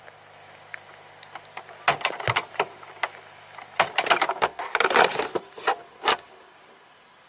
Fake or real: real